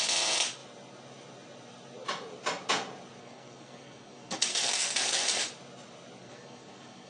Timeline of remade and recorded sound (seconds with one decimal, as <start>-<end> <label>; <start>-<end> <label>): 0.0-3.2 recorded; 3.2-5.5 remade; 5.5-6.2 recorded; 6.2-7.1 remade